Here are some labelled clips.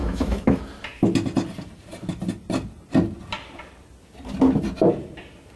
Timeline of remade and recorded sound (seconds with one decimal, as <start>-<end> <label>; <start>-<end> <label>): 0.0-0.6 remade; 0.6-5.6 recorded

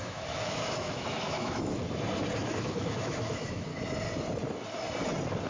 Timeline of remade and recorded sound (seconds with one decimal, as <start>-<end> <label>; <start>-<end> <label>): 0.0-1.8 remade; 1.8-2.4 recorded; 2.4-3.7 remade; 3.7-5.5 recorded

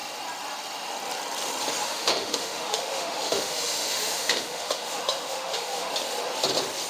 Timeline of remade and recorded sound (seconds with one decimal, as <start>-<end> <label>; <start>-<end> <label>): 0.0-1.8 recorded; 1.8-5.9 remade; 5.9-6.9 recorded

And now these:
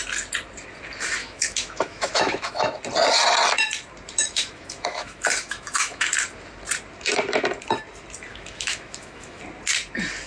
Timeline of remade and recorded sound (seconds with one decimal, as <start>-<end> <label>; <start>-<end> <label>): 0.0-1.2 recorded; 1.2-2.8 remade; 2.8-4.2 recorded; 4.2-6.1 remade; 6.1-8.3 recorded; 8.3-9.4 remade; 9.4-10.3 recorded

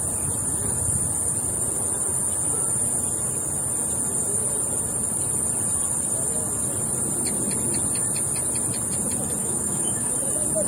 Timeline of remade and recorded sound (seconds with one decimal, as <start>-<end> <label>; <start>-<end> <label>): 0.0-9.4 recorded; 9.4-10.1 remade; 10.1-10.7 recorded